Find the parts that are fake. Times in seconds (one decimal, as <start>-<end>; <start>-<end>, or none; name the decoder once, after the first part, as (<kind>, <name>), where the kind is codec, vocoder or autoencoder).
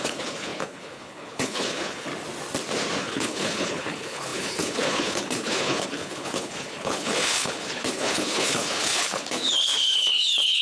0.0-2.1 (codec, HILCodec); 3.0-10.6